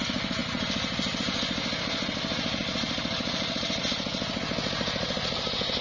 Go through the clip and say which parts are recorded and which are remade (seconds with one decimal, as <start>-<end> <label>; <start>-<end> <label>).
0.0-5.8 recorded

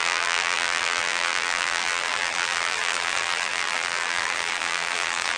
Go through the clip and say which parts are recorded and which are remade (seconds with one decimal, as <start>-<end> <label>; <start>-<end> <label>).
0.0-5.4 remade